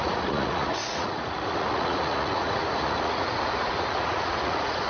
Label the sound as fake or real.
fake